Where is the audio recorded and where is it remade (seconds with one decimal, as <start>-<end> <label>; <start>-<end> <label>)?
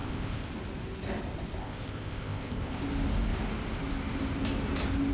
0.0-0.5 remade; 0.5-1.6 recorded; 1.6-2.8 remade; 2.8-5.1 recorded